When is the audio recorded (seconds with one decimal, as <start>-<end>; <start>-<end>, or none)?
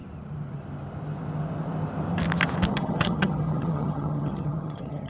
0.0-2.7